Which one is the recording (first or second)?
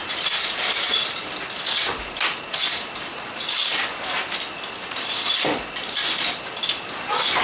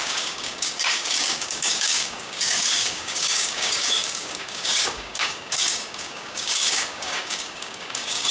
first